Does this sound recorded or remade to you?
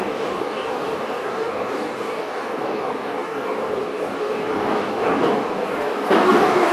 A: remade